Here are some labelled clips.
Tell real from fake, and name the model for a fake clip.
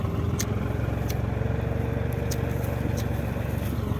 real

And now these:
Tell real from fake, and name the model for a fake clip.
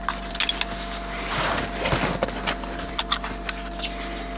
real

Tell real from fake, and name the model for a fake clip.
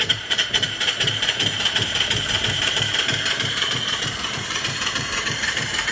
fake, vocoder, BigVGAN v2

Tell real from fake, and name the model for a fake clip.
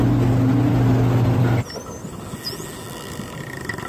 real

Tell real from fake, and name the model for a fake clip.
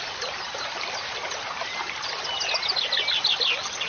real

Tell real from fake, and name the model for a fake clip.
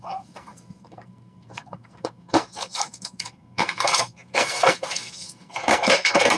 fake, codec, SNAC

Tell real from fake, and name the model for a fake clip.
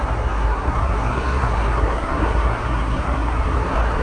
fake, codec, SNAC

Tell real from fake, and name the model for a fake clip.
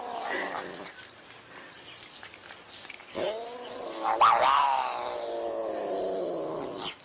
real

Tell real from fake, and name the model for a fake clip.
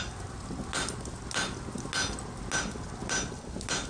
real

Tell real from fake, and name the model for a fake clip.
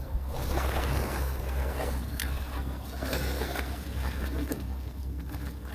fake, codec, SNAC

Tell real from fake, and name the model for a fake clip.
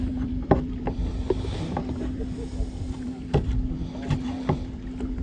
fake, vocoder, BigVGAN v2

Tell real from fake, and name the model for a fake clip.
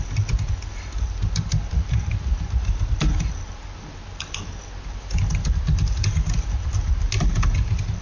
real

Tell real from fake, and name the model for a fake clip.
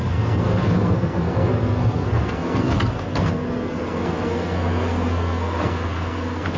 fake, codec, SNAC